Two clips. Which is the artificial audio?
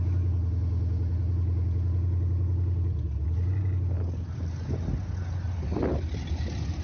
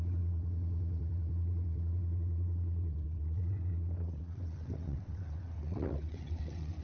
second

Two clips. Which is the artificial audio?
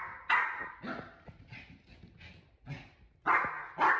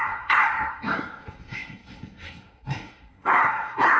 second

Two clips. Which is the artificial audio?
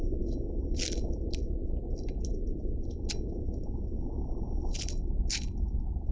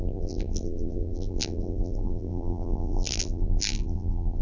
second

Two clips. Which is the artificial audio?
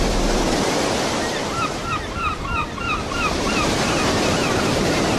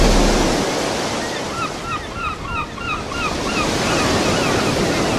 first